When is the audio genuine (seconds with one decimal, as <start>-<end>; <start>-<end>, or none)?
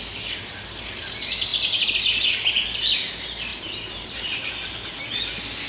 0.0-3.5; 5.1-5.7